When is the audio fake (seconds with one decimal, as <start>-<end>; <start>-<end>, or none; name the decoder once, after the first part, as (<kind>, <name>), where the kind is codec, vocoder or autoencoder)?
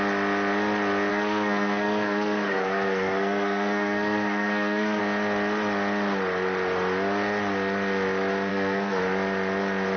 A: 1.1-5.0 (codec, SNAC); 8.5-9.0